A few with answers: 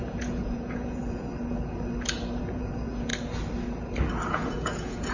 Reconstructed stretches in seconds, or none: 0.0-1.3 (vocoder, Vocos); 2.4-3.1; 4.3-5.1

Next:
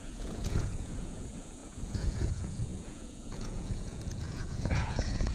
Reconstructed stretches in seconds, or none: 0.0-5.3 (vocoder, Vocos)

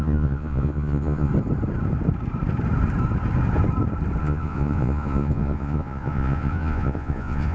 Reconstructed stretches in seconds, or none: 0.0-1.3 (vocoder, Vocos); 4.2-7.5

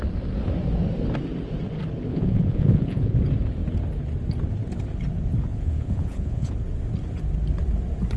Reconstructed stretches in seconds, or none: 2.1-3.2 (vocoder, Vocos); 5.5-6.5

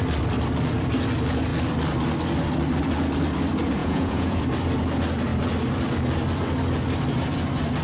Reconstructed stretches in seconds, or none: 3.8-4.4 (vocoder, Vocos)